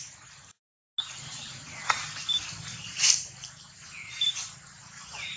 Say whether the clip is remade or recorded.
recorded